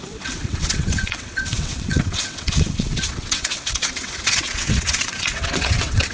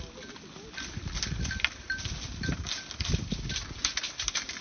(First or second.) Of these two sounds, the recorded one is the second